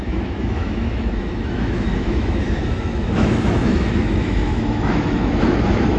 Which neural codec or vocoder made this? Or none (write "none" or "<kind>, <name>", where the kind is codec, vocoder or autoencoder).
autoencoder, DAC-VAE